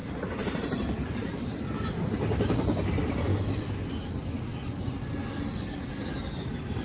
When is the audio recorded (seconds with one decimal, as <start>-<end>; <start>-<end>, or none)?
1.6-6.8